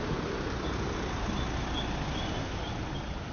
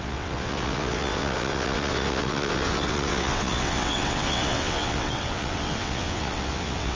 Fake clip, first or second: second